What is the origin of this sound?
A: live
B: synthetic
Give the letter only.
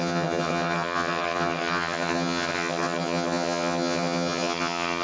B